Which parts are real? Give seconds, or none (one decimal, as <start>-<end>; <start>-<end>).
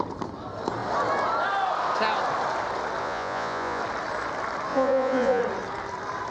0.0-3.0; 3.8-4.7; 5.4-6.3